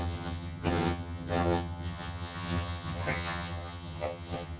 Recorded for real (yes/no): no